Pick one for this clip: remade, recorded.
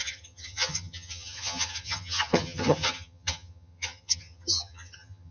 remade